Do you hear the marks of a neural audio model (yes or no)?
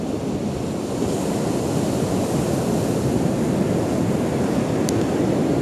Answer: no